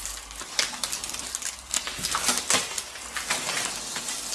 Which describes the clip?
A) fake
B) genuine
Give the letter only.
B